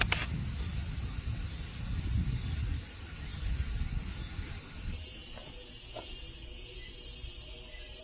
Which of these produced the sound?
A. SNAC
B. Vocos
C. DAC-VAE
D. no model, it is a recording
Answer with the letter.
D